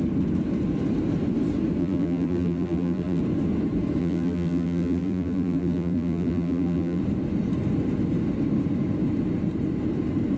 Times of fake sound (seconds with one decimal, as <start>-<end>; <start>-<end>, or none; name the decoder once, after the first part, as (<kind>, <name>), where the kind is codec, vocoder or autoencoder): 1.8-3.2 (vocoder, BigVGAN v2); 4.0-7.0